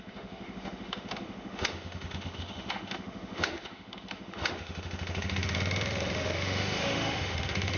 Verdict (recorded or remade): remade